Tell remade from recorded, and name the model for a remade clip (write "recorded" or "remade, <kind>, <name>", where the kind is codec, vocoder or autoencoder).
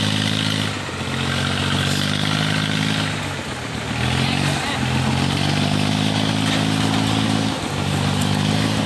recorded